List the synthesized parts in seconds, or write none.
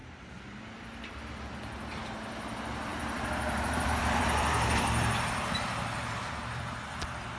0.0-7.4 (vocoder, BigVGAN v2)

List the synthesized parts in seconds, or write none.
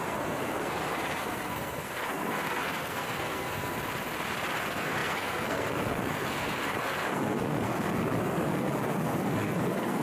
0.0-3.7 (codec, SNAC); 4.6-10.0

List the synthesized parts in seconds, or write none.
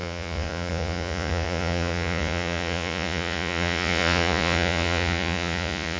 0.0-6.0 (vocoder, Vocos)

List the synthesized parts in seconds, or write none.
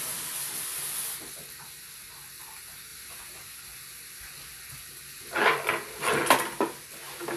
none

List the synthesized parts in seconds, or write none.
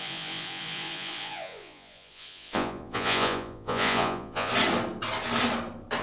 0.0-4.5 (vocoder, Vocos)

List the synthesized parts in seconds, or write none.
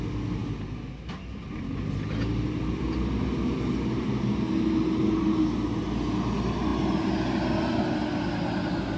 none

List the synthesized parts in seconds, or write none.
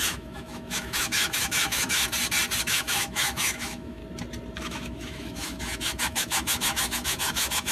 0.0-2.0 (autoencoder, DAC-VAE); 2.6-4.0; 4.6-7.7